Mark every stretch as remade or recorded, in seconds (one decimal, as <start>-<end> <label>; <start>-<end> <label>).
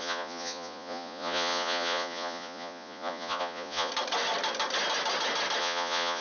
0.0-3.9 remade; 3.9-5.6 recorded; 5.6-6.2 remade